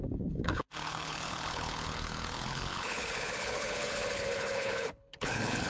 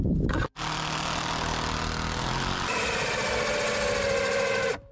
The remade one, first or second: first